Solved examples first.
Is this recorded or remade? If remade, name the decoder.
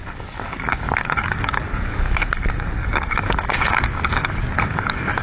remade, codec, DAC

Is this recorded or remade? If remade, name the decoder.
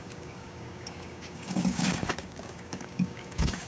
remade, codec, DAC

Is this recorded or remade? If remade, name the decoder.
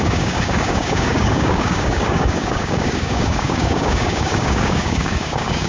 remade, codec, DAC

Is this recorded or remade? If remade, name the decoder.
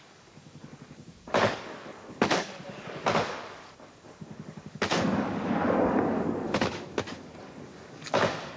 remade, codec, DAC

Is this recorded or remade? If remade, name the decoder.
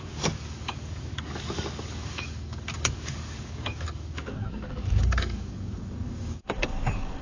remade, codec, DAC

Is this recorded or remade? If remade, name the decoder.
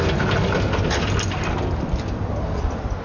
recorded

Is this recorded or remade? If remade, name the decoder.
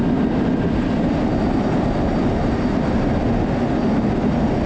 recorded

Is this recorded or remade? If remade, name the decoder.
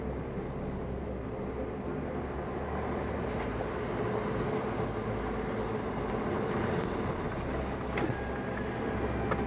recorded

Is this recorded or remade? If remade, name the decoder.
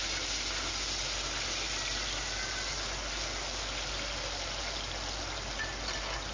recorded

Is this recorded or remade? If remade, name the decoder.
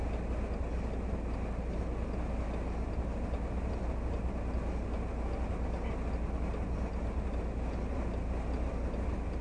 recorded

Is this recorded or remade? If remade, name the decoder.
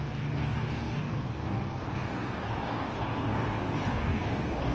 remade, codec, DAC